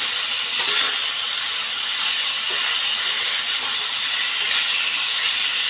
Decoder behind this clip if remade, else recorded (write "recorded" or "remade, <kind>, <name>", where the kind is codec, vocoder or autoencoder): recorded